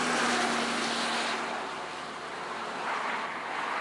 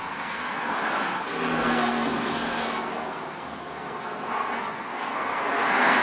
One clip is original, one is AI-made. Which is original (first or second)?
first